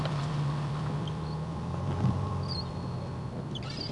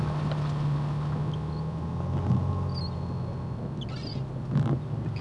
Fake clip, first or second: first